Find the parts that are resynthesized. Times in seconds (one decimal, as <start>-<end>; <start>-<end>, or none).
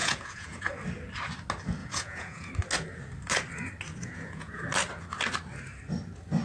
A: 0.0-0.7; 1.8-2.5; 4.0-4.6